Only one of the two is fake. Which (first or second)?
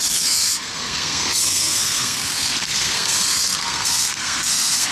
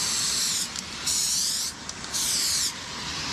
first